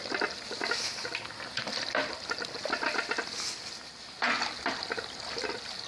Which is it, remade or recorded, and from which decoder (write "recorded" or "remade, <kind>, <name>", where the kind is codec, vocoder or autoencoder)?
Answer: recorded